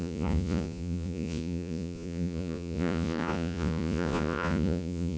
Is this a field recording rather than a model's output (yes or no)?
no